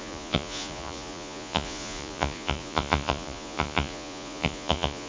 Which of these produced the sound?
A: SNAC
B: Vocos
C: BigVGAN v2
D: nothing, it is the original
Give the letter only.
B